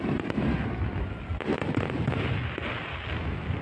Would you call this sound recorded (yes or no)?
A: yes